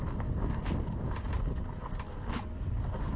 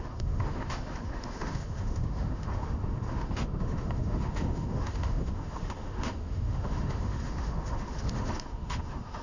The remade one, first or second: second